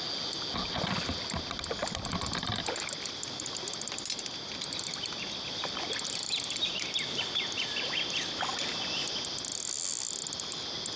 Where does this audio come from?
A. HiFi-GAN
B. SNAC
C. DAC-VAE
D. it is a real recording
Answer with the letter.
D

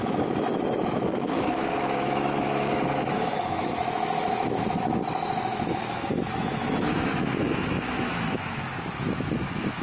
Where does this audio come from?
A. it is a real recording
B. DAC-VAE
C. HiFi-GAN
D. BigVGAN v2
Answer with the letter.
B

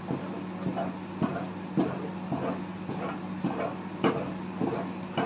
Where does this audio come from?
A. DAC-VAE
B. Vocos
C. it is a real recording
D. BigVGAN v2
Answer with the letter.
C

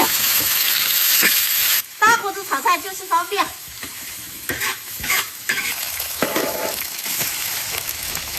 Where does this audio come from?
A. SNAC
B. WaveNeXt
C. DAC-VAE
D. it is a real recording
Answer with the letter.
C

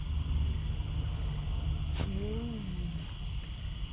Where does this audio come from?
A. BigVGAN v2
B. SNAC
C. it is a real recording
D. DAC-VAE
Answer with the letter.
C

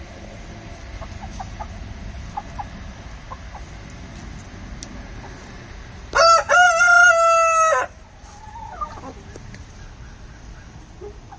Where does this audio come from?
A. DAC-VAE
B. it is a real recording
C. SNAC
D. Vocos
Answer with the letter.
B